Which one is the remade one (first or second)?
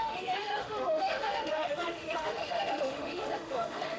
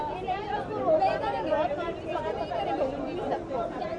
first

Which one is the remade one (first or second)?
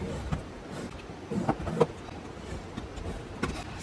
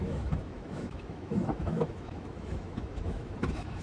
second